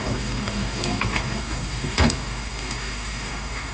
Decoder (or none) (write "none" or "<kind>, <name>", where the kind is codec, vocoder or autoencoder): codec, DAC